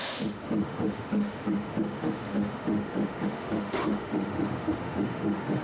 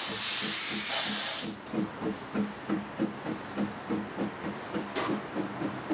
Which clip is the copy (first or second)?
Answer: first